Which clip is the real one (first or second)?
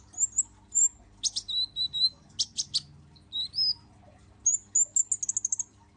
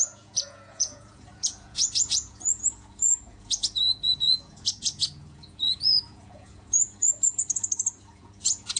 first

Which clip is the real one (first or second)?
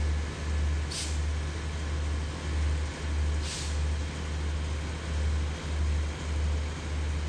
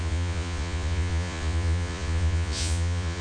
first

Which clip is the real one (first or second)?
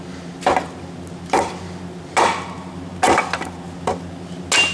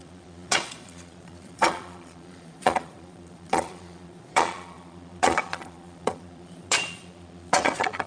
first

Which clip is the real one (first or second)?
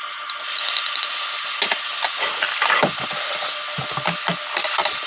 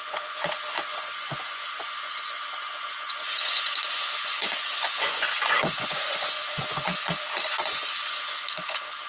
first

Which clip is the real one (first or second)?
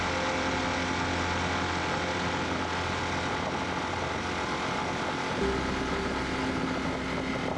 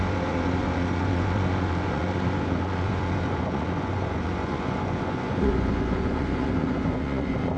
first